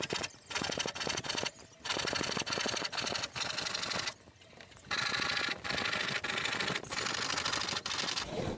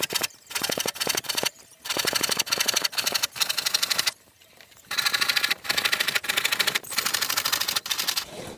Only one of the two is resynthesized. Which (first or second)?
second